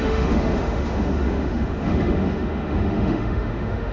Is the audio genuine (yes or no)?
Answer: no